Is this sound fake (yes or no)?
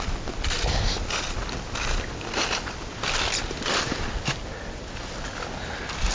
no